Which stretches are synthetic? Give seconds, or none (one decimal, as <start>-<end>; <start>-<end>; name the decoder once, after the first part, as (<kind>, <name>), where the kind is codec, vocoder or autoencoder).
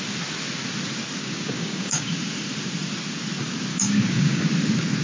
1.2-2.1 (codec, DAC); 3.7-4.5